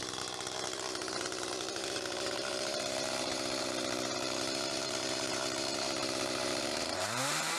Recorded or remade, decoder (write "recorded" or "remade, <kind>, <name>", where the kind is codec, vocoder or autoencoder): remade, vocoder, BigVGAN v2